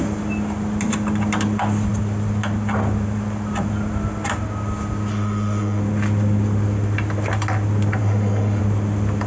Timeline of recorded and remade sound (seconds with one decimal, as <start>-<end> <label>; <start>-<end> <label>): 0.0-5.1 recorded; 5.1-5.8 remade; 5.8-8.0 recorded; 8.0-8.6 remade; 8.6-9.3 recorded